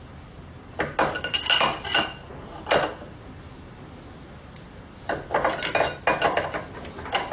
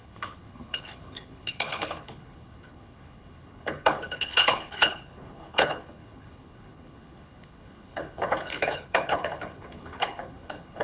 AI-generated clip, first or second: second